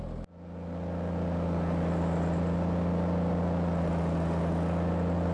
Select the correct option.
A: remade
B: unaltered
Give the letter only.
B